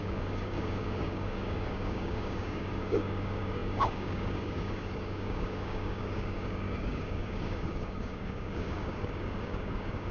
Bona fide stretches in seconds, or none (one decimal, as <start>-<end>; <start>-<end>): none